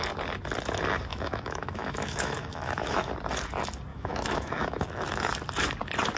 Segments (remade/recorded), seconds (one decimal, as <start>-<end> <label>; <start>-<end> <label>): 0.0-1.1 recorded; 1.1-3.1 remade; 3.1-3.9 recorded; 3.9-5.3 remade; 5.3-6.2 recorded